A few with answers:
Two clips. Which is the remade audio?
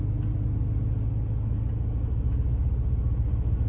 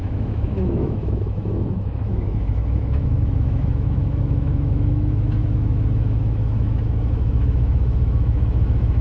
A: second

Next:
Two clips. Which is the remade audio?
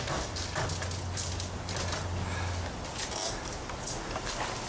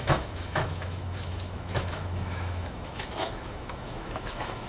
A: second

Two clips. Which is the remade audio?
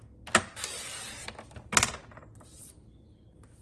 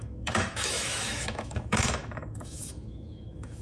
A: second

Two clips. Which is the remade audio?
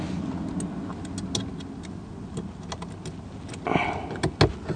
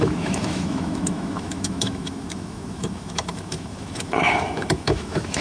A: second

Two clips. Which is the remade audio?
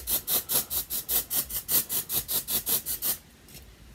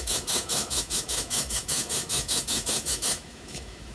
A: second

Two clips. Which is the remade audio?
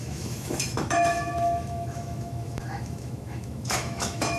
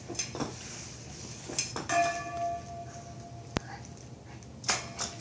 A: first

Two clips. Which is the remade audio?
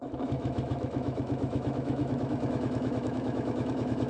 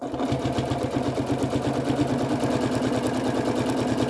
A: first